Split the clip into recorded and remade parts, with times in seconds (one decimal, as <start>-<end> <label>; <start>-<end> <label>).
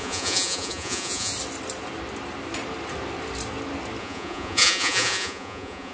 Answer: 0.0-1.3 remade; 1.3-4.0 recorded; 4.0-5.9 remade